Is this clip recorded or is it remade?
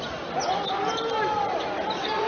recorded